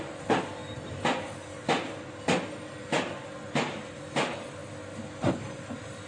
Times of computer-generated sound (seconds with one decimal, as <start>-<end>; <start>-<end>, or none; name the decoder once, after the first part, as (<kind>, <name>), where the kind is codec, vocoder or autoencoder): 0.0-0.6 (vocoder, BigVGAN v2); 3.7-4.6; 5.3-6.1